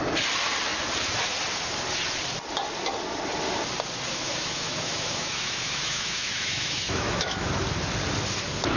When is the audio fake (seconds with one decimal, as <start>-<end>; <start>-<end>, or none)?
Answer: 4.1-7.5